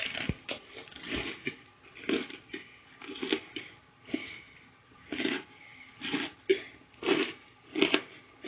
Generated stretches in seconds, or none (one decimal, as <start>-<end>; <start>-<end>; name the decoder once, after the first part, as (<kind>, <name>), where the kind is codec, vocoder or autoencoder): 5.1-5.8 (codec, DAC)